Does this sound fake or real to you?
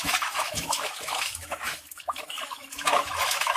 fake